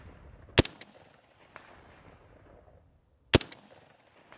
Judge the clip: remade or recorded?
recorded